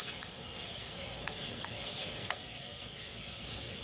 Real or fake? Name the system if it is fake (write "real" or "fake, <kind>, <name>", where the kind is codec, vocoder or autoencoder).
fake, codec, SNAC